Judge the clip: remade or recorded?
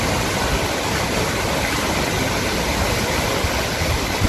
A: recorded